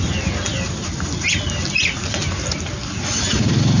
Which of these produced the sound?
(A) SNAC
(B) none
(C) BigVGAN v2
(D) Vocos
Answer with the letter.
B